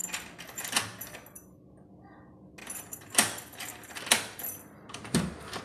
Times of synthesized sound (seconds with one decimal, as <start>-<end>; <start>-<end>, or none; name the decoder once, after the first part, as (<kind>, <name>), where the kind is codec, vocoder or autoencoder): 2.6-5.6 (vocoder, BigVGAN v2)